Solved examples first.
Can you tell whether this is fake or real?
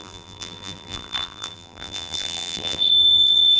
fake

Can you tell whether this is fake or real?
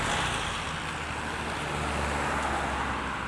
real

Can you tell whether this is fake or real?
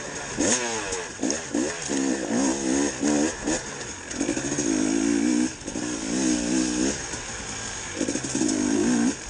real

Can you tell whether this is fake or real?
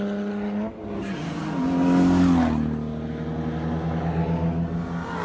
real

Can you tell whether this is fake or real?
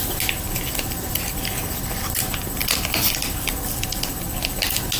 real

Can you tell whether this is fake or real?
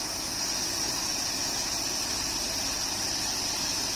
real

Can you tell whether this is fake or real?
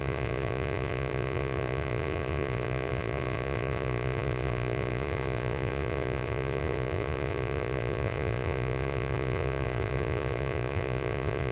fake